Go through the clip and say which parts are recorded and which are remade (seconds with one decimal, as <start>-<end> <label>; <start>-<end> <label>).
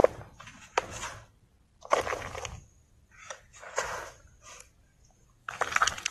0.0-3.2 recorded; 3.2-3.7 remade; 3.7-5.4 recorded; 5.4-6.1 remade